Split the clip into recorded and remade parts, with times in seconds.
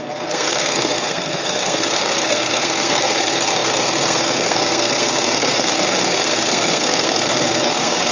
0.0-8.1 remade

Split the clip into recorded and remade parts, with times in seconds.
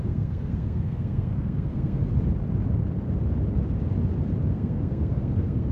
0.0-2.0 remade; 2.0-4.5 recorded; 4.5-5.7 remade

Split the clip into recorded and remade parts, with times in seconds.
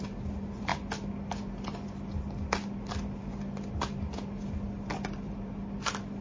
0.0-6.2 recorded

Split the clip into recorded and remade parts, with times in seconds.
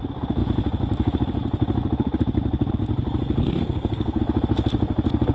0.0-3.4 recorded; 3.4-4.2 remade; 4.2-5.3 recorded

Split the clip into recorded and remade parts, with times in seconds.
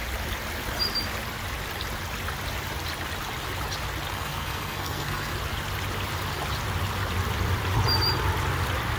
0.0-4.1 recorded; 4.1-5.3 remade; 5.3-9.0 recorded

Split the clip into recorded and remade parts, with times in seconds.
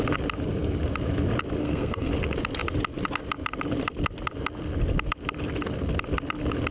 0.0-1.6 recorded; 1.6-2.1 remade; 2.1-6.7 recorded